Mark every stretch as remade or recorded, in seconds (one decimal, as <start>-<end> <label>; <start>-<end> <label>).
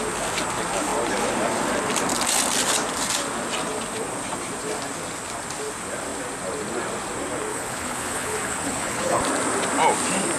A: 0.0-7.5 recorded; 7.5-9.2 remade; 9.2-10.4 recorded